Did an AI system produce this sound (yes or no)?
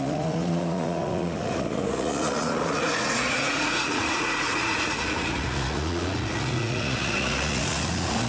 yes